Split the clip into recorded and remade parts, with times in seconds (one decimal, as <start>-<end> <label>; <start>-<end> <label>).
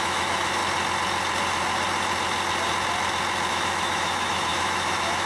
0.0-0.6 remade; 0.6-3.5 recorded; 3.5-5.3 remade